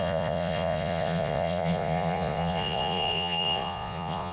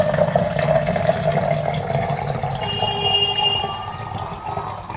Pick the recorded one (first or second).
second